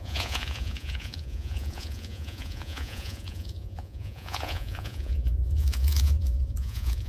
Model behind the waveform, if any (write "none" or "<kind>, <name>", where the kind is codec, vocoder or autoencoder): vocoder, Vocos